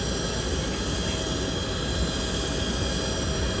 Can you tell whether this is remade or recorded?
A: recorded